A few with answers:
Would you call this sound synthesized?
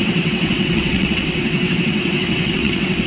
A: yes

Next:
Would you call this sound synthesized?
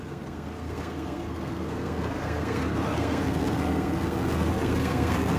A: yes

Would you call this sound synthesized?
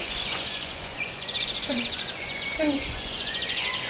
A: yes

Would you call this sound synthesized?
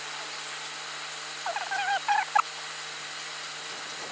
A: no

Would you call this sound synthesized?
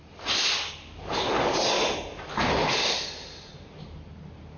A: no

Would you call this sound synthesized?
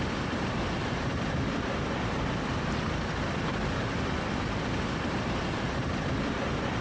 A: yes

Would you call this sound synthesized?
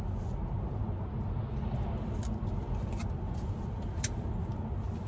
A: no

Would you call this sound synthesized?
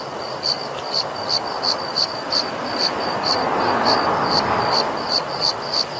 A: yes